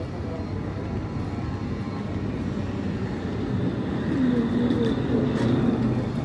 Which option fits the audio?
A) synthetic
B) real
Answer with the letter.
B